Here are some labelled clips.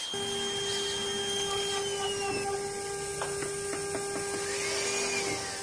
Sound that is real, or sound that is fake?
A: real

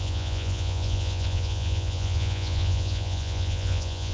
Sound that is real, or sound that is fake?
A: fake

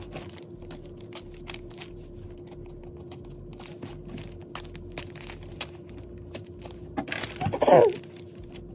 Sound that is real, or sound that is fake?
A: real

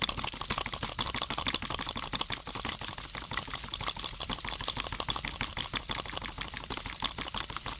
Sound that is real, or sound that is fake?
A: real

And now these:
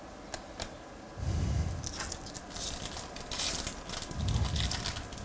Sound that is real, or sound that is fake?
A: real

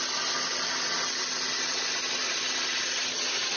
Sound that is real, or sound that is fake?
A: real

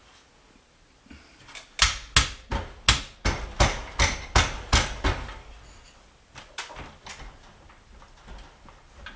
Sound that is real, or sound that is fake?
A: real